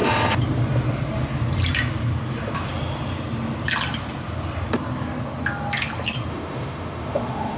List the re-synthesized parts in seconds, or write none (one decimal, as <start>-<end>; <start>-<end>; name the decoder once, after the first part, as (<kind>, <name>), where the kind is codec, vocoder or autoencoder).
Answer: 6.3-7.6 (autoencoder, DAC-VAE)